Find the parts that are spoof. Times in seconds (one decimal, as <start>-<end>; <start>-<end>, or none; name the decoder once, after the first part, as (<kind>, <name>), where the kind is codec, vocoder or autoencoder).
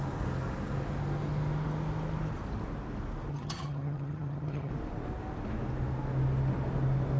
3.3-4.7 (vocoder, HiFi-GAN)